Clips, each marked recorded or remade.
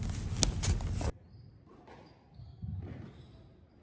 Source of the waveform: recorded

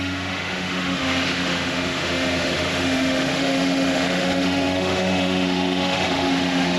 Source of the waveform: remade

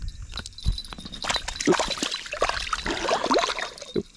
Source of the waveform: recorded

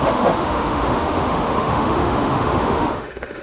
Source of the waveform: remade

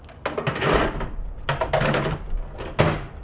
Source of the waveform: recorded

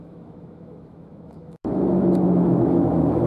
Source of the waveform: remade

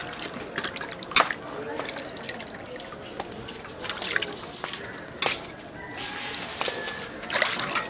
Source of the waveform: recorded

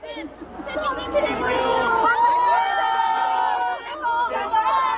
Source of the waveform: recorded